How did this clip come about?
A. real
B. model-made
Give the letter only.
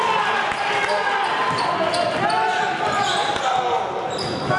A